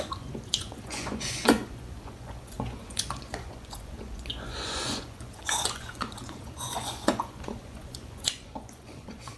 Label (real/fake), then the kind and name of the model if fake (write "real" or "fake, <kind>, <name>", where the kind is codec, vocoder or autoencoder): fake, vocoder, Vocos